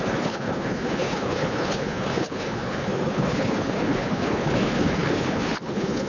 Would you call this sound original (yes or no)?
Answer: no